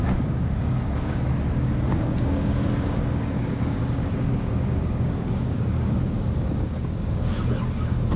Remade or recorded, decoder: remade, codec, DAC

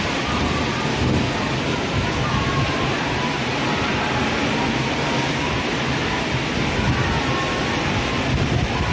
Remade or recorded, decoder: recorded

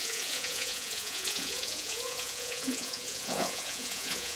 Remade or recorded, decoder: remade, vocoder, Vocos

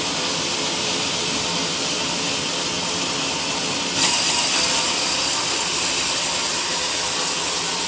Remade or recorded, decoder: recorded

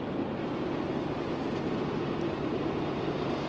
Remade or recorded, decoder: recorded